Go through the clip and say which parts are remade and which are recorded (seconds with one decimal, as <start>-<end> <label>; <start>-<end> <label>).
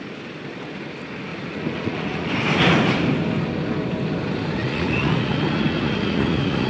0.0-1.3 recorded; 1.3-2.3 remade; 2.3-4.6 recorded; 4.6-6.7 remade